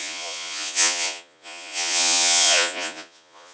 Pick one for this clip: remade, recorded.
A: remade